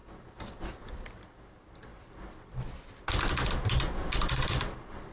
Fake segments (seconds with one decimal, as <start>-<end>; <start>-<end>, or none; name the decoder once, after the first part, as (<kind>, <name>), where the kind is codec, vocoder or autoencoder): none